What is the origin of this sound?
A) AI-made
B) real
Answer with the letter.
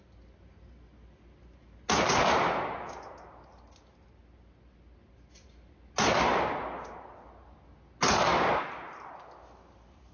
B